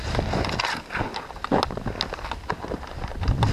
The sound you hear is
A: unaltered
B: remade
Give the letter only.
A